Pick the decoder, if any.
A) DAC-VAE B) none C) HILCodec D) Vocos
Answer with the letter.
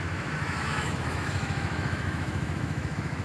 A